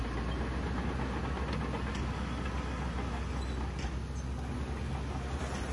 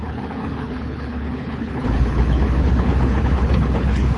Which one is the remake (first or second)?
second